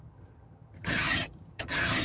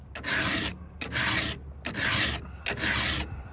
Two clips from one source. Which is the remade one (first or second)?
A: first